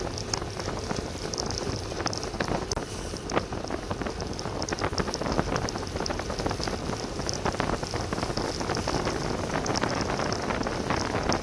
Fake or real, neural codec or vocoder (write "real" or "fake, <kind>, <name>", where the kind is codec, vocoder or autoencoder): real